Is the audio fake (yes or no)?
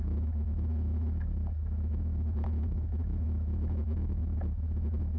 yes